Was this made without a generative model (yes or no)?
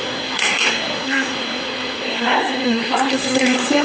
no